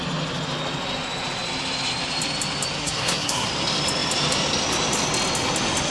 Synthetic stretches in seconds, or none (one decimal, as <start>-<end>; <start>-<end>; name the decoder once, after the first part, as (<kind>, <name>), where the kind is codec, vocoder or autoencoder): 2.8-3.5 (codec, SNAC)